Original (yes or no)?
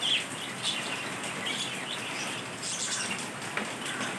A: yes